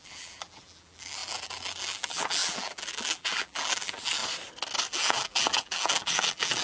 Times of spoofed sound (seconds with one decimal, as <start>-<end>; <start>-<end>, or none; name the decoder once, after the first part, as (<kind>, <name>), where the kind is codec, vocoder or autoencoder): 0.0-4.2 (vocoder, BigVGAN v2); 4.9-6.6